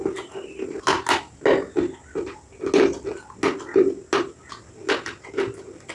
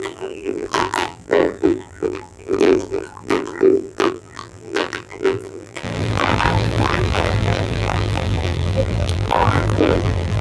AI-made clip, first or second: second